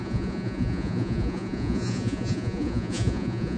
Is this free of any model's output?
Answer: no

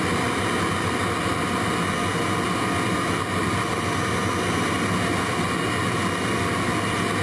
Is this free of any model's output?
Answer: yes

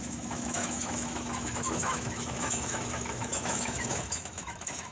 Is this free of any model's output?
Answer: no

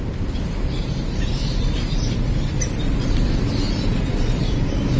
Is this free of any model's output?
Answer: yes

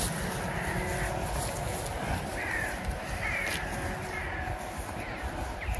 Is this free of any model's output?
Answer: yes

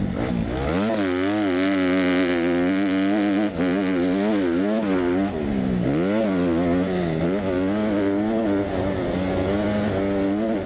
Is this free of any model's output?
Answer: yes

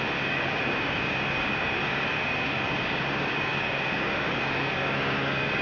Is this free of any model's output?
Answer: no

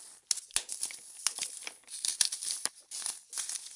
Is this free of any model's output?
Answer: yes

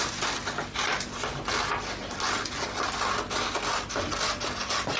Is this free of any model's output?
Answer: yes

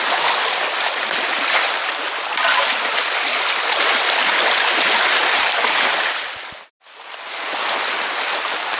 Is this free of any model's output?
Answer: yes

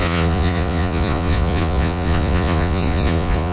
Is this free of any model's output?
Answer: no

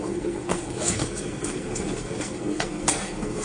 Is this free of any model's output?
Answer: no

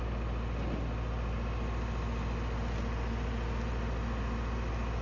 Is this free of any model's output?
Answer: yes